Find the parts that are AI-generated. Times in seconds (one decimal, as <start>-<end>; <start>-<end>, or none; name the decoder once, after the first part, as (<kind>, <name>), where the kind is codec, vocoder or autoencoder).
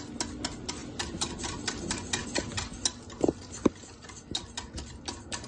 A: none